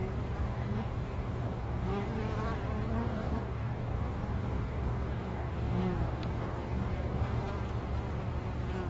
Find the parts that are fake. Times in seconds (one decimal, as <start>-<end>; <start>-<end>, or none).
0.4-2.1; 3.0-7.4